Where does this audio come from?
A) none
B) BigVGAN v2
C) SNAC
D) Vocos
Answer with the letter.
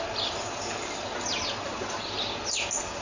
A